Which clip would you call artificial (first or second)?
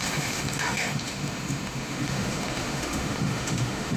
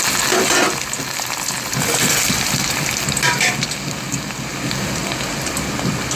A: first